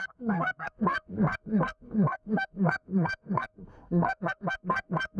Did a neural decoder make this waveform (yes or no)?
yes